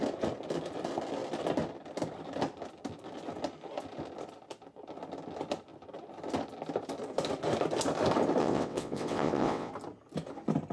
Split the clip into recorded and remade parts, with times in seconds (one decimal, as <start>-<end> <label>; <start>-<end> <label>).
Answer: 0.0-8.4 recorded; 8.4-9.7 remade; 9.7-10.7 recorded